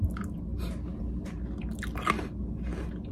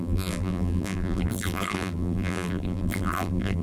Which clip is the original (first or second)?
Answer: first